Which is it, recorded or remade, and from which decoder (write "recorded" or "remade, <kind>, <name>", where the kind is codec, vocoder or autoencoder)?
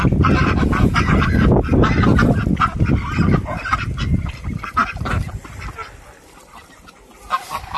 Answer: recorded